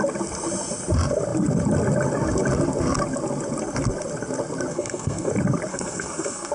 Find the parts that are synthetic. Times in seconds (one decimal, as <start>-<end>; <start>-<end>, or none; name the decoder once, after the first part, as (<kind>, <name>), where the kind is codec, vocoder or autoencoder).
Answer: 4.7-5.3 (codec, SNAC); 5.7-6.5